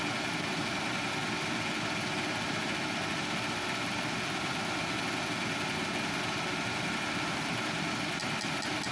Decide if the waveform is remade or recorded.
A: recorded